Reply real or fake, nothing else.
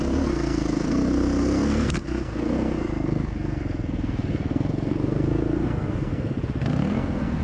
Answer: fake